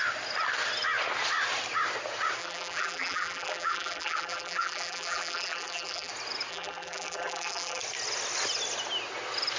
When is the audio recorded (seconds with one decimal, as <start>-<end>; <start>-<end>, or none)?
0.0-2.4; 6.1-6.5; 7.8-9.6